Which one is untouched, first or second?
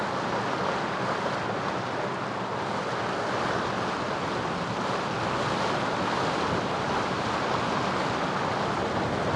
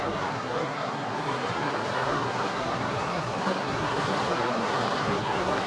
first